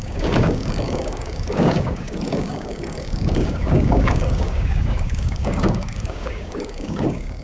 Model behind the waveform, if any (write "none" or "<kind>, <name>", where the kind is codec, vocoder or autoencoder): codec, DAC